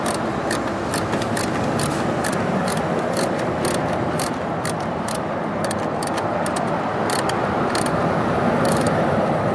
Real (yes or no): yes